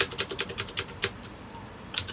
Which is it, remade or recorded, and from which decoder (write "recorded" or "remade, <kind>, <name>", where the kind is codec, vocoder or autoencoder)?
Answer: remade, vocoder, BigVGAN v2